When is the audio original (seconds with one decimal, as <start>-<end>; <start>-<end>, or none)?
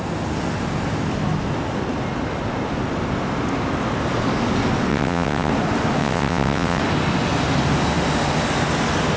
0.0-4.9; 5.5-6.0; 6.8-9.2